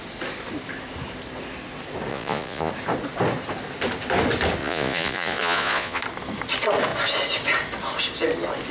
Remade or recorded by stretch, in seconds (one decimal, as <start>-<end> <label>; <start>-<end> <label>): 0.0-2.1 recorded; 2.1-2.7 remade; 2.7-4.6 recorded; 4.6-6.0 remade; 6.0-8.7 recorded